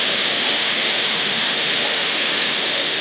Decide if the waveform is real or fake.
fake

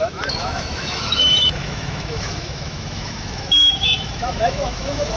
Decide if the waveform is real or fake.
fake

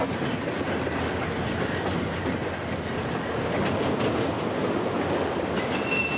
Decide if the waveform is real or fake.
real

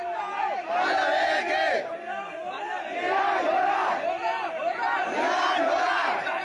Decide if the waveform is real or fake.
real